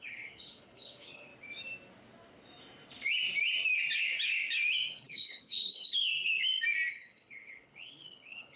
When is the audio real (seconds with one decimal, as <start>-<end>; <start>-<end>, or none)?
1.3-4.9; 6.1-6.9